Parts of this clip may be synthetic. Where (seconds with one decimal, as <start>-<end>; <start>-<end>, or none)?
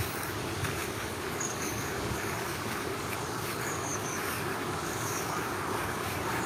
0.0-6.5